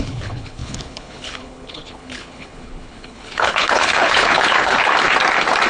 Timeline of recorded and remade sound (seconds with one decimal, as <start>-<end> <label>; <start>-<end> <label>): 0.0-4.9 remade; 4.9-5.7 recorded